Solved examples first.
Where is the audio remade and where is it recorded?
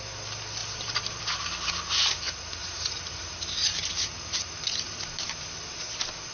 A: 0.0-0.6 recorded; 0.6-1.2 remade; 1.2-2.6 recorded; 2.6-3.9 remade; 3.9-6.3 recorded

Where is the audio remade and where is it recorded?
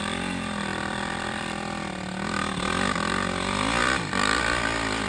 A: 0.0-0.7 recorded; 0.7-1.4 remade; 1.4-3.8 recorded; 3.8-4.4 remade; 4.4-5.1 recorded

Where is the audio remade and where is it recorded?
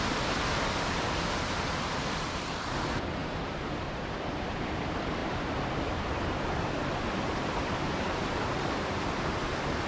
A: 0.0-5.2 remade; 5.2-6.9 recorded; 6.9-9.9 remade